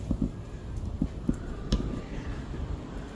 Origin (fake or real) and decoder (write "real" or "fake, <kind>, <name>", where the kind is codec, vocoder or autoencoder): real